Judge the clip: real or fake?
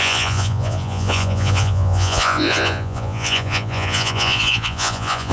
fake